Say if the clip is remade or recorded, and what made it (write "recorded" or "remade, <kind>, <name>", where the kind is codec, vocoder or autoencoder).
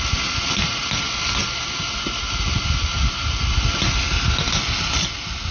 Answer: recorded